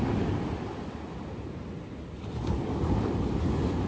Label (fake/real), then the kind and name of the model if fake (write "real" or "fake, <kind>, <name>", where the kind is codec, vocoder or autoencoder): real